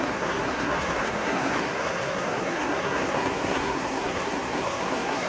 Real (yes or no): no